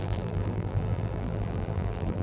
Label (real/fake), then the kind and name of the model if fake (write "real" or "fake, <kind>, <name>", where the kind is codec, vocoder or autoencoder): fake, vocoder, BigVGAN v2